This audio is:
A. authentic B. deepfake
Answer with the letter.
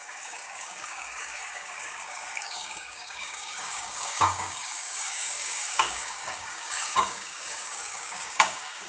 B